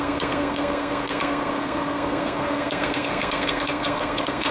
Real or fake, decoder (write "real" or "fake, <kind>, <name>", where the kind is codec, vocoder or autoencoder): fake, codec, SNAC